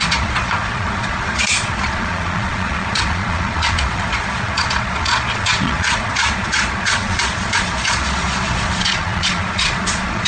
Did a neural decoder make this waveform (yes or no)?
yes